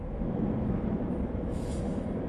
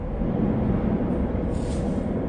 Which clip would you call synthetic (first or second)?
first